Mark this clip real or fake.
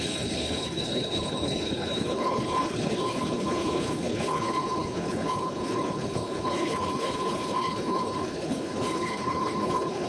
fake